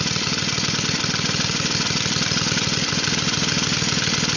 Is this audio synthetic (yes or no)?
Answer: no